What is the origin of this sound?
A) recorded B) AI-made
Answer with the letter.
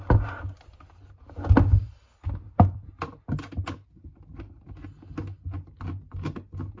A